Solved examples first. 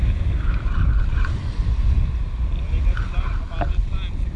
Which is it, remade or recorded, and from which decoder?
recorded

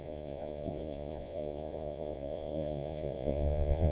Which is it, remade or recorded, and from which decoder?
remade, vocoder, Vocos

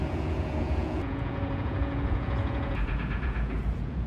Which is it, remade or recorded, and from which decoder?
remade, vocoder, Vocos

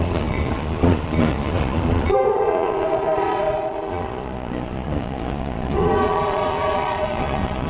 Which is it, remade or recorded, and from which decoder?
remade, vocoder, Vocos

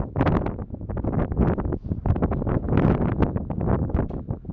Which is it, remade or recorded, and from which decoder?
recorded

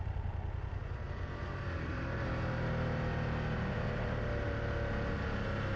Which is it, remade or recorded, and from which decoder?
recorded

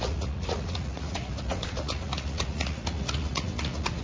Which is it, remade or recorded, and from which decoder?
remade, vocoder, Vocos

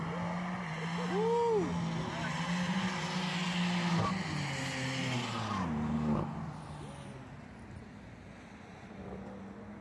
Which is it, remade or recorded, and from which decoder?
recorded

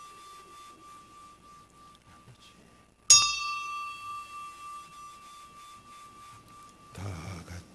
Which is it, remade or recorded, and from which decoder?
recorded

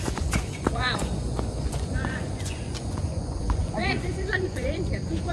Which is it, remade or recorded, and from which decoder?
remade, vocoder, Vocos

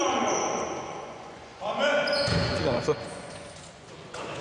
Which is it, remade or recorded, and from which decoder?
remade, vocoder, Vocos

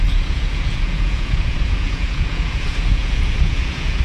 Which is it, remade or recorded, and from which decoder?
remade, vocoder, Vocos